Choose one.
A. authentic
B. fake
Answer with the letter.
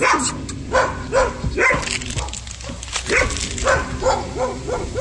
A